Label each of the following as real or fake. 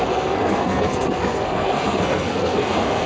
fake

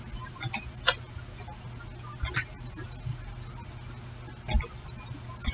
real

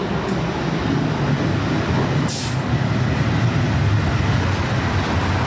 real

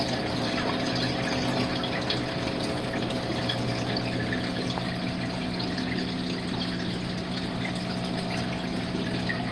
real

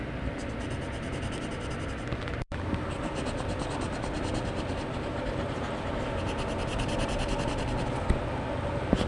real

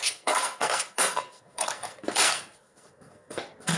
fake